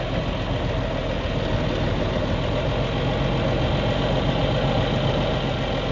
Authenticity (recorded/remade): recorded